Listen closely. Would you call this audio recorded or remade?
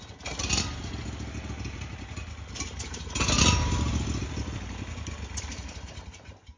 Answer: recorded